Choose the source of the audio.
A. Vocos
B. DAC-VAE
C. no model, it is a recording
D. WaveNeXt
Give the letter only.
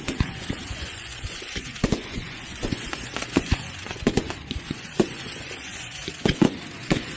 A